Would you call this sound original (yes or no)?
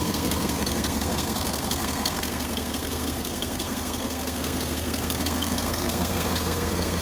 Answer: no